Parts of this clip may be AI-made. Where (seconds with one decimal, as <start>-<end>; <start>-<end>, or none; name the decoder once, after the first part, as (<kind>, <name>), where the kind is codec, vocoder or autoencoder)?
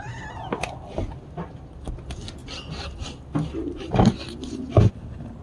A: 2.4-4.9 (vocoder, BigVGAN v2)